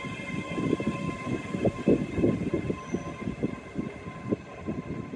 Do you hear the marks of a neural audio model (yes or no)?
no